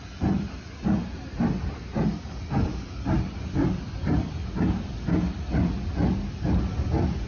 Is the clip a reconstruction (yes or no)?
no